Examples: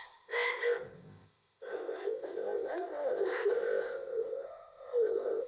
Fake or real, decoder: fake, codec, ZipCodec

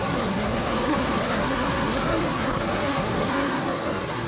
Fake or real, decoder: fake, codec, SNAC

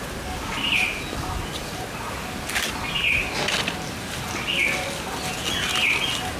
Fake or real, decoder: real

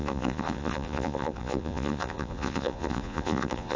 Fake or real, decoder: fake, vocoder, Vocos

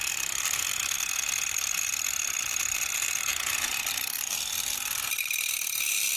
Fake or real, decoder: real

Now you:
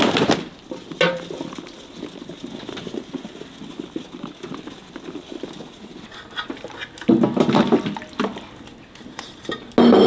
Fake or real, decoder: real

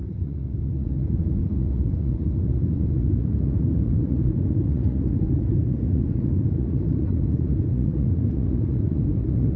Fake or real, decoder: fake, vocoder, Vocos